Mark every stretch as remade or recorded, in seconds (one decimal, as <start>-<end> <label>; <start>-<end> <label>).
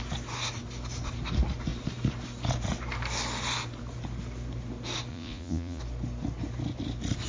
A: 0.0-5.1 recorded; 5.1-5.8 remade; 5.8-7.3 recorded